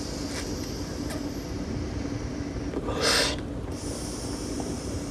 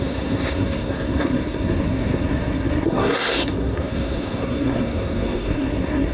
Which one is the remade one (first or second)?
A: second